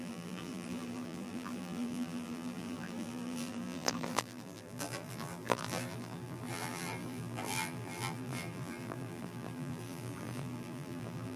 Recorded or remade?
remade